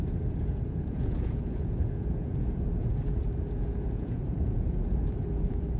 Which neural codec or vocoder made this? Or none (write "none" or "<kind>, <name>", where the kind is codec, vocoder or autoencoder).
vocoder, Vocos